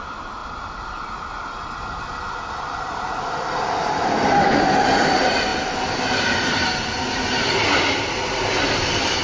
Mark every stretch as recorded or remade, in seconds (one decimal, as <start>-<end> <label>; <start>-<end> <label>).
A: 0.0-9.2 recorded